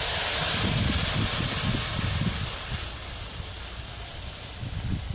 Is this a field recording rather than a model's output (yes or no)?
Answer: yes